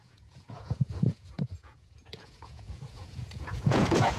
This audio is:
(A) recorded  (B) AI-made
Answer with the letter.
B